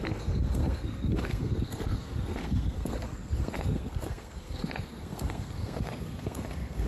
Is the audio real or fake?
fake